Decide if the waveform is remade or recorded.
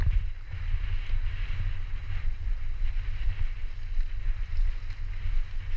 recorded